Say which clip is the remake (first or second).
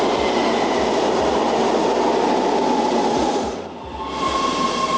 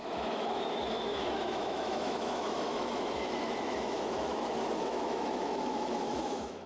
second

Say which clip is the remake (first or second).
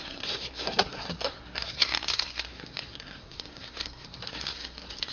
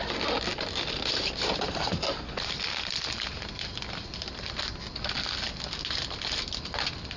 first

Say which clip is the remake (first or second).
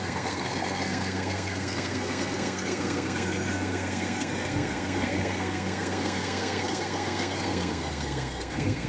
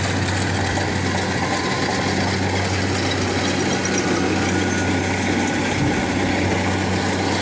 first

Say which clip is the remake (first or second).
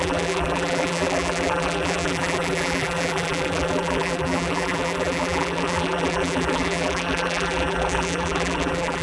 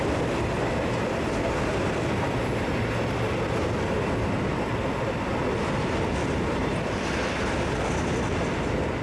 first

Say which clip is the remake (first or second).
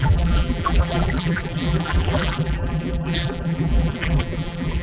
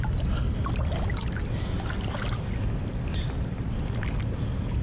first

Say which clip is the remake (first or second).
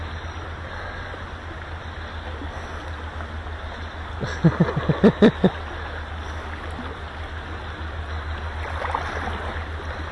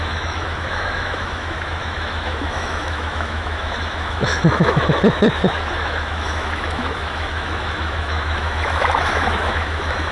second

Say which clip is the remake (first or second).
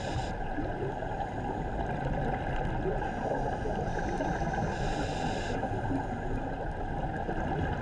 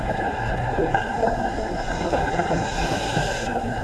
second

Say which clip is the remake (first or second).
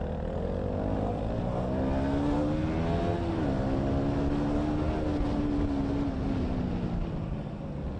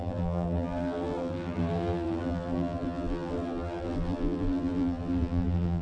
second